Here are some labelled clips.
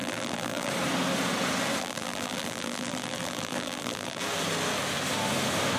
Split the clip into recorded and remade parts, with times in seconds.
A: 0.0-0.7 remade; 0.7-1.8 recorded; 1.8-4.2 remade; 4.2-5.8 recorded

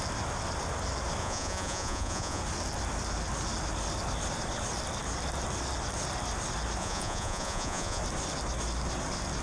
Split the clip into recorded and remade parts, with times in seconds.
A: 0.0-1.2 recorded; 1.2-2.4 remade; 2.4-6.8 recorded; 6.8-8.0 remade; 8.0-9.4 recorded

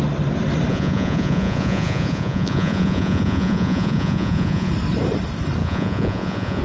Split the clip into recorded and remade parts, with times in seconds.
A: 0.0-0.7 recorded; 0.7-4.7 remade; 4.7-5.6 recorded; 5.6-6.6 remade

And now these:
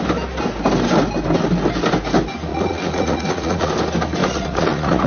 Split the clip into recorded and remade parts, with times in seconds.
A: 0.0-2.5 recorded; 2.5-3.7 remade; 3.7-4.2 recorded; 4.2-5.1 remade